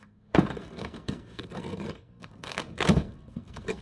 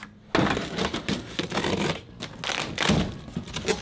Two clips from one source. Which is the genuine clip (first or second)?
second